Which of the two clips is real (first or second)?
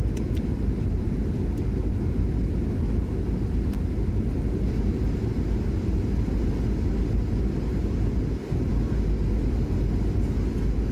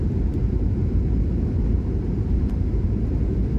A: first